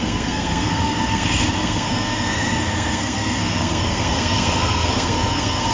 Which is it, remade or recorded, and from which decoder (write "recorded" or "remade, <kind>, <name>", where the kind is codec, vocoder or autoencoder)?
remade, codec, SNAC